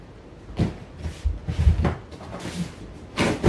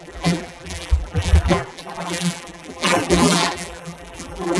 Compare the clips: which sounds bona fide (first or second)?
first